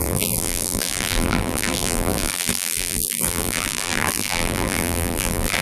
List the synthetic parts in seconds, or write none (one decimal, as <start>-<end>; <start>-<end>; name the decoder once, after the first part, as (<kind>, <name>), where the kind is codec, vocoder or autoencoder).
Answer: 0.0-5.6 (vocoder, BigVGAN v2)